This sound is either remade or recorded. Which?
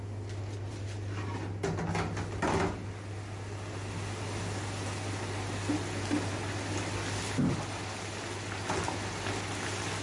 recorded